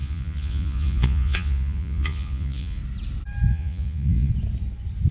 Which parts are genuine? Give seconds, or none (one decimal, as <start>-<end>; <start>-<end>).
2.8-3.5; 4.3-5.1